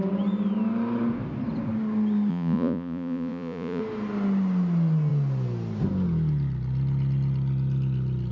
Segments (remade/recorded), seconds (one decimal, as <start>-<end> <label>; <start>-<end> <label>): 0.0-2.3 recorded; 2.3-3.8 remade; 3.8-8.3 recorded